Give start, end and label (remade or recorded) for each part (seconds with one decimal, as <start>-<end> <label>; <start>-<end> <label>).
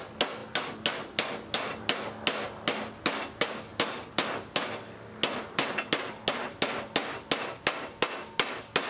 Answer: 0.0-8.9 recorded